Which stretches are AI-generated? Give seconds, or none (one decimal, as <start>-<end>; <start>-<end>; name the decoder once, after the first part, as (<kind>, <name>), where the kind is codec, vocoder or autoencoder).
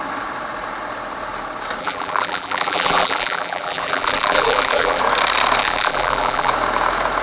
1.8-5.0 (vocoder, BigVGAN v2); 5.6-6.5